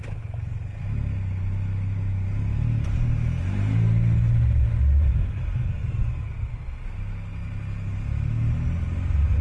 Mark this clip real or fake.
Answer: real